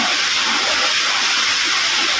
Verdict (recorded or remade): remade